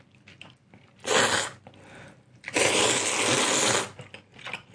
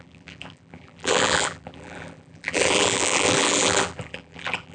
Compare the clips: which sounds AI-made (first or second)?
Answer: second